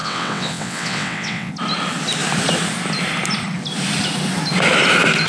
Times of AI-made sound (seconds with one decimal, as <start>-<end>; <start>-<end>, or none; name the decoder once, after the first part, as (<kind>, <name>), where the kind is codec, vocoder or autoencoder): 0.0-1.5 (vocoder, WaveNeXt)